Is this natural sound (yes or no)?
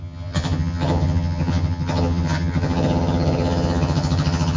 no